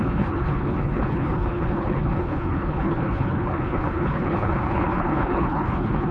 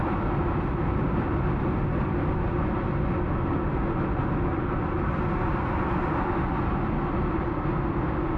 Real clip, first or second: second